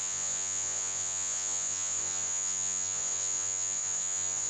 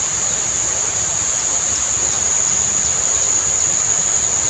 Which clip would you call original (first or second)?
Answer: second